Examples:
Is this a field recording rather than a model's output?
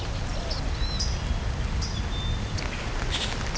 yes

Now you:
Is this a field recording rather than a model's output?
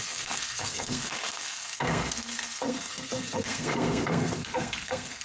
no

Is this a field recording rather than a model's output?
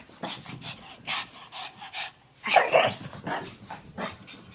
yes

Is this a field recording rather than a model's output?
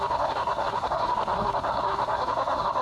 no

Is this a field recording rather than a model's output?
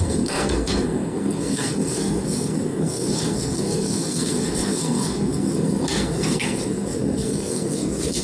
no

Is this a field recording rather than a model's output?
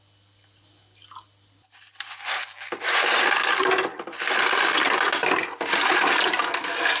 yes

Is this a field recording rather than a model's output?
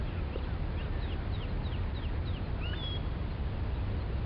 yes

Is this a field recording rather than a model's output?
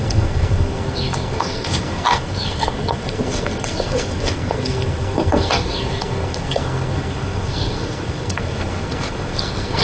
no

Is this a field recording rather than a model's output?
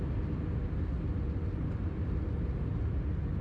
yes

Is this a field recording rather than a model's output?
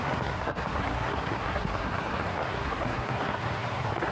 no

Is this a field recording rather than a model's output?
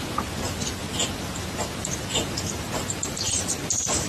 no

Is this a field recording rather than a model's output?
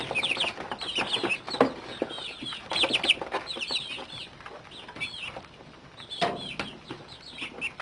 yes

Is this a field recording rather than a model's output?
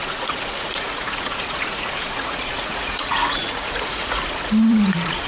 no